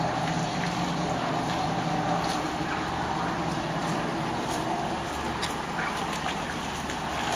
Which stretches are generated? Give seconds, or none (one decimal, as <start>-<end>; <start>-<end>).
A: none